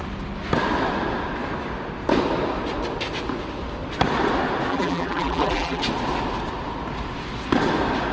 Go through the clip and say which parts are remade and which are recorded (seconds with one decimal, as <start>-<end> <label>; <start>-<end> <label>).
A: 0.0-4.7 recorded; 4.7-5.8 remade; 5.8-8.1 recorded

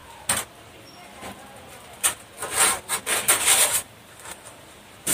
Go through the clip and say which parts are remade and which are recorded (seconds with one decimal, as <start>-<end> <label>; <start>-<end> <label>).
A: 0.0-3.1 recorded; 3.1-5.1 remade

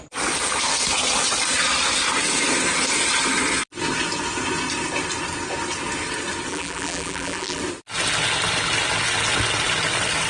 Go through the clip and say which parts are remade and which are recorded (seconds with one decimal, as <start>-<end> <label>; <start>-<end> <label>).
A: 0.0-6.5 recorded; 6.5-7.6 remade; 7.6-10.3 recorded

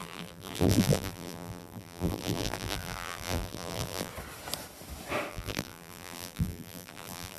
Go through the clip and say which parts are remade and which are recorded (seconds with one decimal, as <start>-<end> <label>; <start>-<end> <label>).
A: 0.0-4.1 remade; 4.1-5.3 recorded; 5.3-7.4 remade

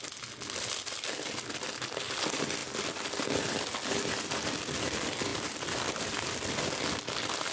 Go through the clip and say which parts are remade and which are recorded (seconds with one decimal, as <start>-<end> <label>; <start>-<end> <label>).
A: 0.0-7.5 recorded

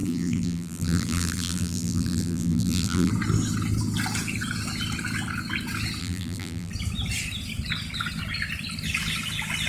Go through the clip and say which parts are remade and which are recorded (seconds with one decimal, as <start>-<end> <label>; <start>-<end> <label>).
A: 0.0-3.1 remade; 3.1-6.0 recorded; 6.0-6.7 remade; 6.7-9.7 recorded